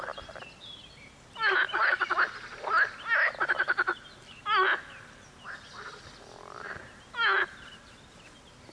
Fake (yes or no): no